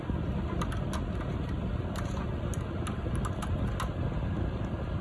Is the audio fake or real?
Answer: real